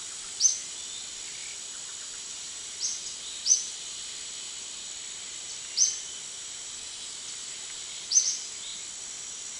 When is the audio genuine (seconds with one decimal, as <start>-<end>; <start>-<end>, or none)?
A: 0.0-9.6

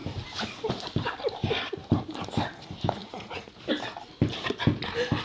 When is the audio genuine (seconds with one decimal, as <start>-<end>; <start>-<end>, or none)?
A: 0.0-3.0; 3.6-5.2

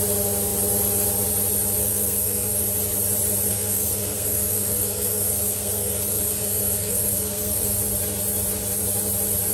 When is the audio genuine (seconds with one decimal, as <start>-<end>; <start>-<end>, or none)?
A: 0.0-1.8; 2.6-3.5; 7.8-9.5

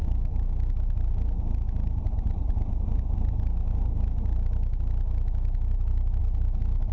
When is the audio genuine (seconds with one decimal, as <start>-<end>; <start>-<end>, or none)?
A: 0.0-6.9

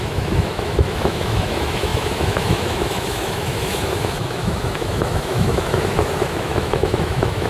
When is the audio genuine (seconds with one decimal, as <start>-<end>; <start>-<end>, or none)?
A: none

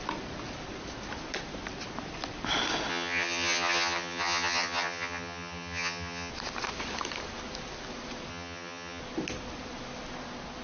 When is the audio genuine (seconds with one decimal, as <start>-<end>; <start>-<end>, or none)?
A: 0.0-2.9; 6.3-8.3; 9.0-10.6